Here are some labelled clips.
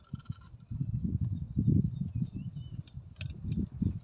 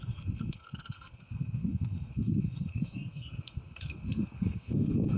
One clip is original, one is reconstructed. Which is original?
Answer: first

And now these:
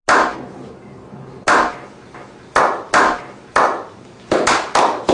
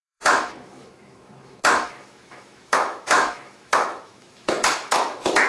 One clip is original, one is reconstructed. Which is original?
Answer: first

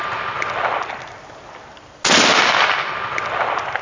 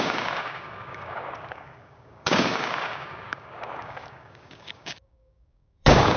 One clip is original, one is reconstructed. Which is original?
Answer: first